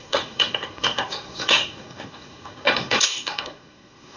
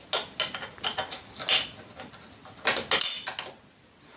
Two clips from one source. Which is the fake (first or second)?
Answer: first